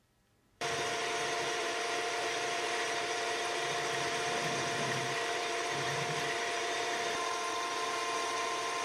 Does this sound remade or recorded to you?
remade